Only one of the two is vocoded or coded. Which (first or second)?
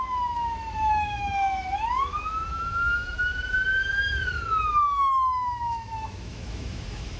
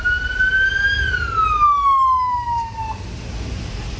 first